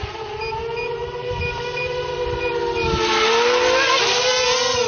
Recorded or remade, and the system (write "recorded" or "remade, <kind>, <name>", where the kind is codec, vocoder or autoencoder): recorded